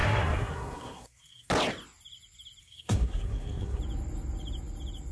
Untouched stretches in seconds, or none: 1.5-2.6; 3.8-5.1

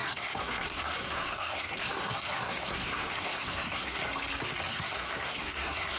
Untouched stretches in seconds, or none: 4.0-4.7

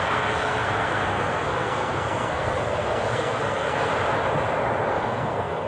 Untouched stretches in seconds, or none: 3.9-4.9

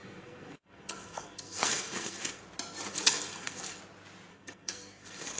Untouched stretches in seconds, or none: 2.4-2.9; 3.8-4.3

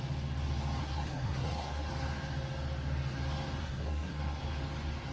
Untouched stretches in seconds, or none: 0.0-0.8; 1.9-3.6; 4.4-5.1

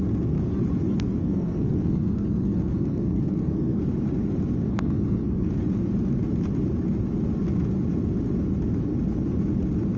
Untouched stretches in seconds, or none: 0.0-1.2; 3.8-4.7; 5.5-10.0